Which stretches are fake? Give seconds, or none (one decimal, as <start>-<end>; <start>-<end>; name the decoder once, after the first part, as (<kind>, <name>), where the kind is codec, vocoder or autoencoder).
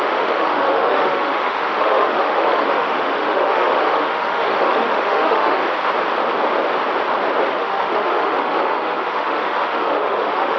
0.0-5.6 (autoencoder, DAC-VAE); 7.6-10.6